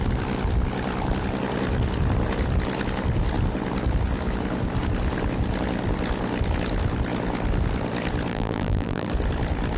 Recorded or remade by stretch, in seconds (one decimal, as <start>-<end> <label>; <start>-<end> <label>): 0.0-8.3 recorded; 8.3-9.1 remade; 9.1-9.8 recorded